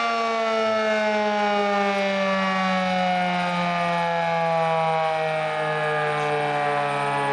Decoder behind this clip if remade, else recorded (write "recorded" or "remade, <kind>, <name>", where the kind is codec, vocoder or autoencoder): recorded